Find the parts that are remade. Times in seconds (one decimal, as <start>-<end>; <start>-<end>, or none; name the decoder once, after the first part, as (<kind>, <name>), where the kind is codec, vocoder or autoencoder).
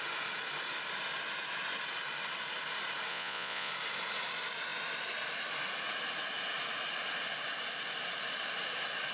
3.1-3.7 (vocoder, Vocos)